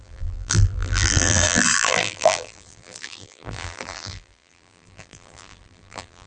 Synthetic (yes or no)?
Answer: yes